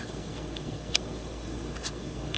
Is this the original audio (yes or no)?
no